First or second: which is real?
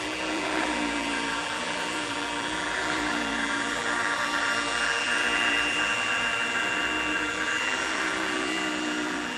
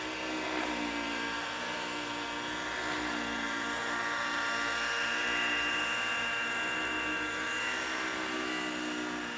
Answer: second